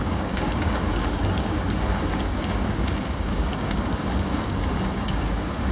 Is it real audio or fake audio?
fake